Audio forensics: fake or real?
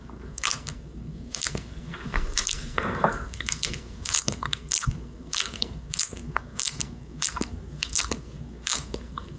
fake